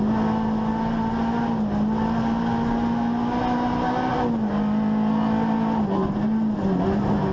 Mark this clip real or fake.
real